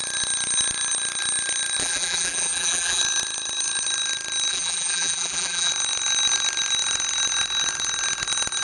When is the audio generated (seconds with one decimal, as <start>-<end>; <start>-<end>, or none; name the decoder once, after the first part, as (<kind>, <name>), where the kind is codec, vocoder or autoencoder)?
1.8-3.0 (vocoder, BigVGAN v2); 4.5-5.7